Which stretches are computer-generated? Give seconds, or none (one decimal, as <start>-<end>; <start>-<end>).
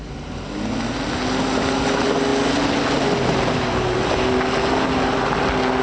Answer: none